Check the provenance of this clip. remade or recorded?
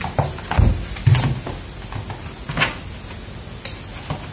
recorded